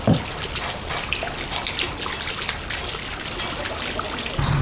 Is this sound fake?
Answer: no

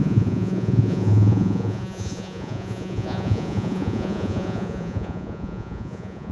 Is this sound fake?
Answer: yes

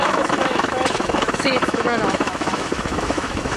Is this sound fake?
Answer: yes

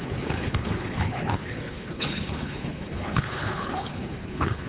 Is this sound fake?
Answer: yes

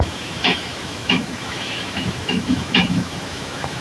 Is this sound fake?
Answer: yes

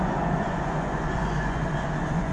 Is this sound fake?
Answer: yes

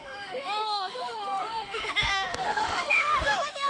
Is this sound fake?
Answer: yes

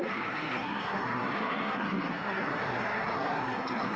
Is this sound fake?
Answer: yes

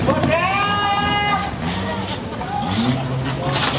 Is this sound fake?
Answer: no